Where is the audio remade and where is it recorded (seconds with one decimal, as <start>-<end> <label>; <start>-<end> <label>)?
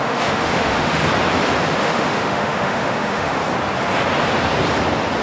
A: 0.0-1.0 remade; 1.0-1.8 recorded; 1.8-3.4 remade; 3.4-5.2 recorded